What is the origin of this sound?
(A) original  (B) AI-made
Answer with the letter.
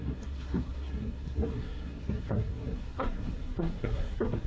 B